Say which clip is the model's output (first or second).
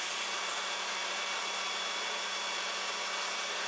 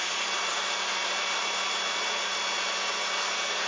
first